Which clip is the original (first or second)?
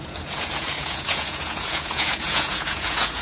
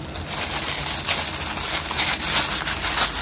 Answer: second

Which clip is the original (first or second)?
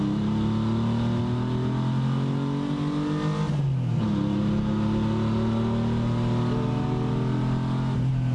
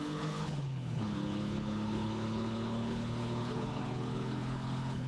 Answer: first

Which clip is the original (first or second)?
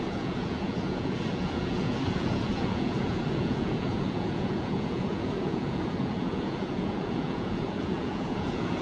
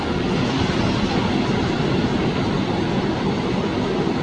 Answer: second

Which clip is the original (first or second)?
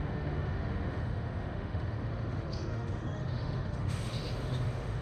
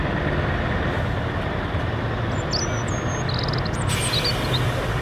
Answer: second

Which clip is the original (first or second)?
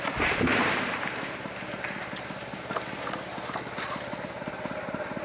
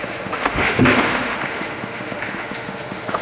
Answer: first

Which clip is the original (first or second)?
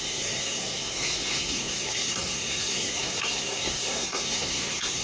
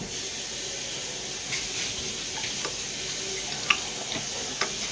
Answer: second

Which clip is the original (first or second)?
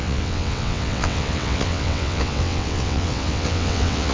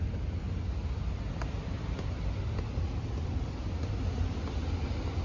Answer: second